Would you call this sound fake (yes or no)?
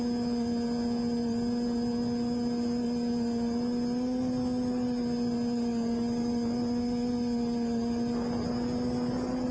no